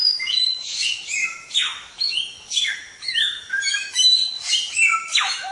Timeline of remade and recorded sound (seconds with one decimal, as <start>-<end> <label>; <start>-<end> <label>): 0.0-4.1 remade; 4.1-4.7 recorded; 4.7-5.5 remade